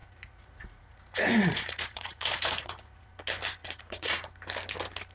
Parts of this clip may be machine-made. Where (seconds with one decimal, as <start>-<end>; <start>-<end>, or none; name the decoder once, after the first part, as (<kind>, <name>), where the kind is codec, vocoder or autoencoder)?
0.0-3.1 (vocoder, Vocos); 3.6-4.3